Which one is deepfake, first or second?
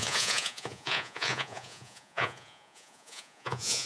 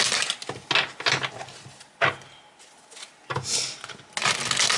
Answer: first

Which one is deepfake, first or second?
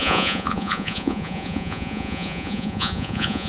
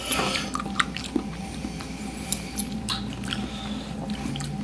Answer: first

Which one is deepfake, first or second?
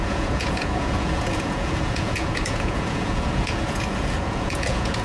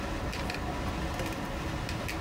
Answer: first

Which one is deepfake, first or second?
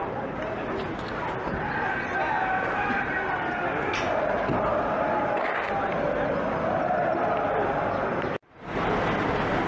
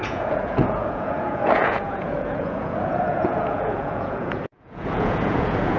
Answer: second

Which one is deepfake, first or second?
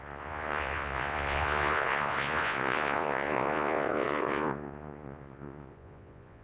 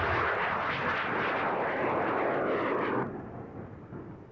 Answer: first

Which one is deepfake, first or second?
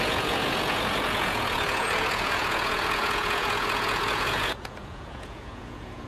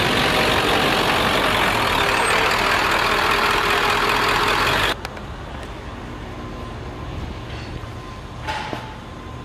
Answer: first